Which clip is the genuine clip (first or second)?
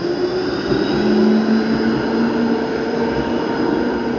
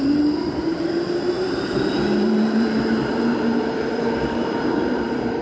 first